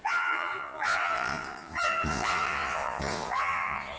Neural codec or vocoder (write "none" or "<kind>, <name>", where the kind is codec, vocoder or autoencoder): vocoder, Vocos